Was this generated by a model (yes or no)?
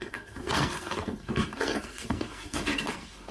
yes